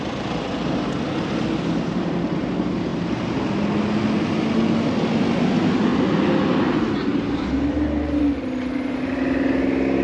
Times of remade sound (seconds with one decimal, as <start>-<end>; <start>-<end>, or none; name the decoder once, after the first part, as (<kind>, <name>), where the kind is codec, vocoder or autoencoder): 2.9-3.4 (vocoder, BigVGAN v2); 7.1-8.2

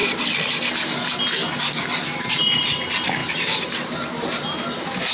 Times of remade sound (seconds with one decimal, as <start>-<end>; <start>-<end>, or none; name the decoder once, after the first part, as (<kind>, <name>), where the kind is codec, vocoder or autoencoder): 3.2-3.9 (vocoder, BigVGAN v2)

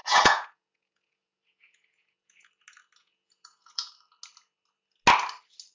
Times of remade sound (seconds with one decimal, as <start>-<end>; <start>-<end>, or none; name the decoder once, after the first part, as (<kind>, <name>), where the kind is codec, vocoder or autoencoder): 0.0-2.5 (vocoder, Vocos); 3.0-3.9

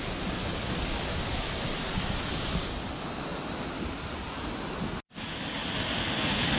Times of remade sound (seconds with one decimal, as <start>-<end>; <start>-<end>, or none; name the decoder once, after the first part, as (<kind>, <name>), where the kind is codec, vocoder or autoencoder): none

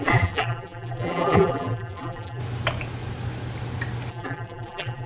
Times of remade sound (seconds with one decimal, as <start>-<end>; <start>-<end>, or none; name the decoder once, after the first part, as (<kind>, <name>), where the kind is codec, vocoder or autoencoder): 0.0-2.4 (vocoder, BigVGAN v2); 4.1-5.1